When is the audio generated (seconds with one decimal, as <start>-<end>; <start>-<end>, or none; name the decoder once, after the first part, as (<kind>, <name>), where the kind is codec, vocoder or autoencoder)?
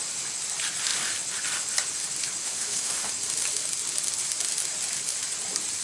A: 2.4-3.1 (autoencoder, DAC-VAE)